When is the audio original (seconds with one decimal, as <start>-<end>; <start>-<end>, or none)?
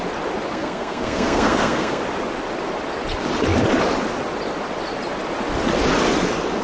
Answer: 0.0-0.5; 2.0-6.6